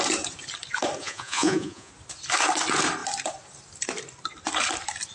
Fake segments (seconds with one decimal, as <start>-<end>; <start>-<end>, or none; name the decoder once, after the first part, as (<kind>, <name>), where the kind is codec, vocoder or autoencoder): 1.0-1.9 (vocoder, Vocos)